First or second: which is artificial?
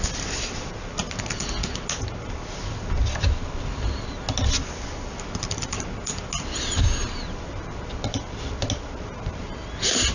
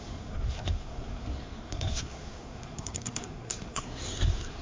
second